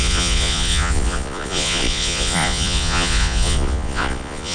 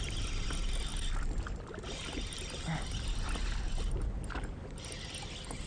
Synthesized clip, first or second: first